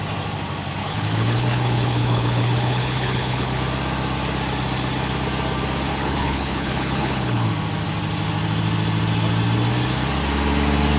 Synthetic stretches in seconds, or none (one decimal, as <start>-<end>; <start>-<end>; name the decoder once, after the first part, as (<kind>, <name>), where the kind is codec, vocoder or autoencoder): 0.8-3.6 (codec, HILCodec); 5.9-7.5